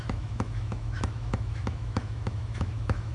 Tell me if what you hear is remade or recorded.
remade